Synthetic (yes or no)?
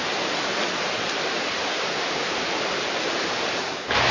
no